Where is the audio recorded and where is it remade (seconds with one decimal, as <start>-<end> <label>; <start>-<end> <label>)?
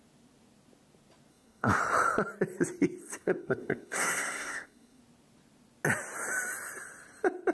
0.0-1.3 recorded; 1.3-1.8 remade; 1.8-3.0 recorded; 3.0-5.0 remade; 5.0-7.5 recorded